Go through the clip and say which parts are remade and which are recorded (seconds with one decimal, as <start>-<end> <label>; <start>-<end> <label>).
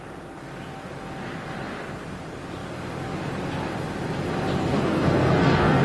0.0-4.6 recorded; 4.6-5.8 remade